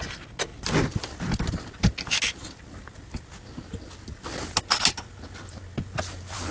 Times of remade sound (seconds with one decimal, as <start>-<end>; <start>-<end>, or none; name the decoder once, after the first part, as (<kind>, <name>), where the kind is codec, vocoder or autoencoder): none